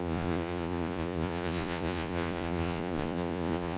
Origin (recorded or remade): remade